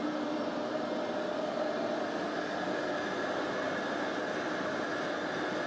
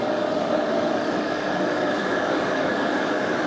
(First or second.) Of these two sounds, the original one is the first